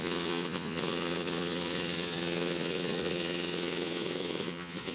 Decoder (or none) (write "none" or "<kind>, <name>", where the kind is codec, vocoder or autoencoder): vocoder, Vocos